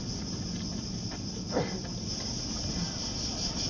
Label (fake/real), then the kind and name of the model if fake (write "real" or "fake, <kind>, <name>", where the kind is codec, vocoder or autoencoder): real